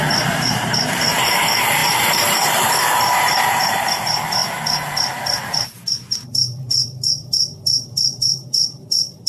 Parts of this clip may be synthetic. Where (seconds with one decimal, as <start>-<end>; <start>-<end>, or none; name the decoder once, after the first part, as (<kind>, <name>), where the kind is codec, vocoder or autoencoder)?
0.0-4.4 (vocoder, BigVGAN v2); 5.9-9.3